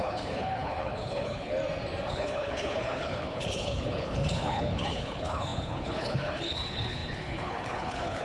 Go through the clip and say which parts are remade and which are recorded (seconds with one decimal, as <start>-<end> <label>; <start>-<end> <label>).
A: 0.0-1.6 remade; 1.6-2.1 recorded; 2.1-8.2 remade